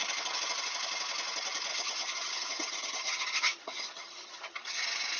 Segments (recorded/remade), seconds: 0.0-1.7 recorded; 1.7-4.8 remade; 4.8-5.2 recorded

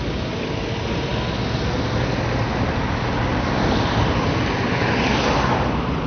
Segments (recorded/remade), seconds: 0.0-6.1 recorded

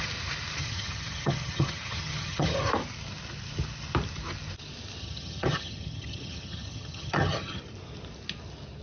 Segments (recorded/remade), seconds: 0.0-0.6 recorded; 0.6-2.7 remade; 2.7-5.0 recorded; 5.0-7.6 remade; 7.6-8.8 recorded

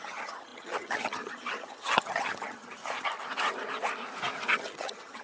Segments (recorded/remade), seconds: 0.0-2.8 remade; 2.8-4.5 recorded; 4.5-5.2 remade

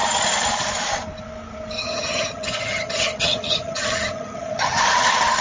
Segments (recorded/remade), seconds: 0.0-1.8 recorded; 1.8-4.8 remade; 4.8-5.4 recorded

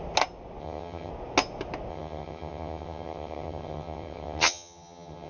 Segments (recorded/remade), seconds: 0.0-0.6 recorded; 0.6-1.1 remade; 1.1-1.9 recorded; 1.9-5.3 remade

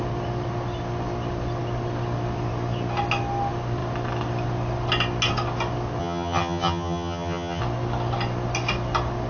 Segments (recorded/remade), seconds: 0.0-6.0 recorded; 6.0-7.6 remade; 7.6-9.3 recorded